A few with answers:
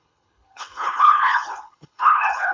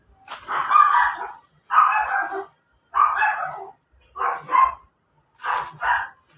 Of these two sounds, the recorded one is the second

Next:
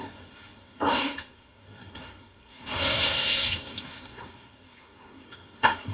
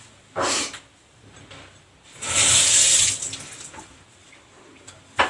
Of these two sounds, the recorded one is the second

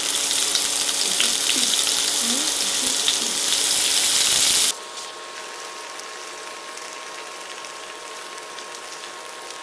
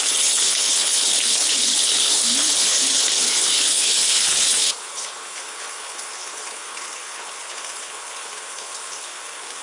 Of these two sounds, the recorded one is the first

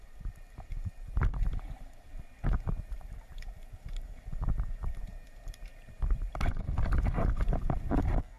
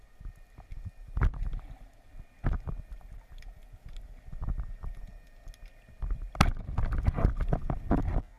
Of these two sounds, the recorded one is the second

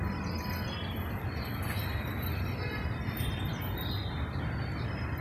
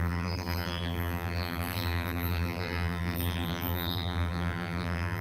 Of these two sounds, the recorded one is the first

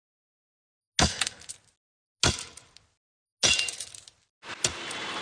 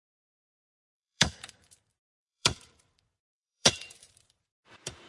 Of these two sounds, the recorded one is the first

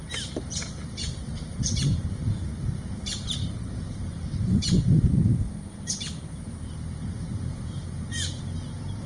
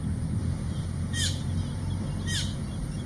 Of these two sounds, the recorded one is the second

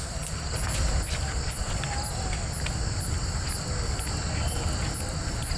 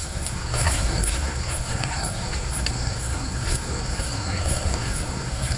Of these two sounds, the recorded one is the first